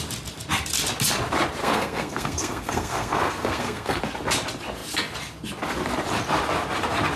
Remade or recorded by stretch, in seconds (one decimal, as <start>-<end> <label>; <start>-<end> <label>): 0.0-1.6 recorded; 1.6-4.0 remade; 4.0-7.2 recorded